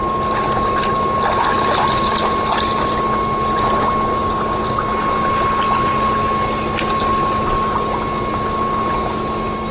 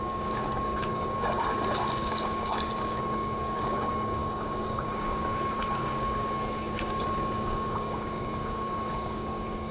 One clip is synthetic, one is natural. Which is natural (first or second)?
first